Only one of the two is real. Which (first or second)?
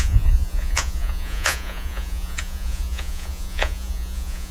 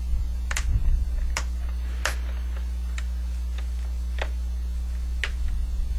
second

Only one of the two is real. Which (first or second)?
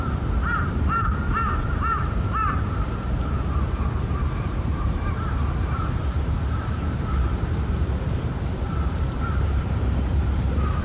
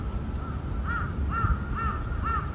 second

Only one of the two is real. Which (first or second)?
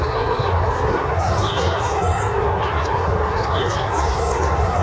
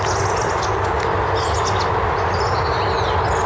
second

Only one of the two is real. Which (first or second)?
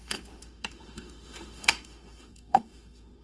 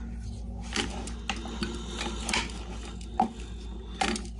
second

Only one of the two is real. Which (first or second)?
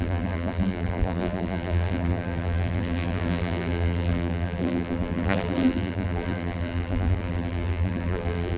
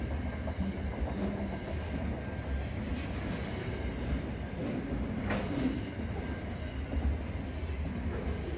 second